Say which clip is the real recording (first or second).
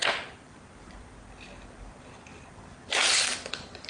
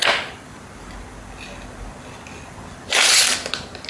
second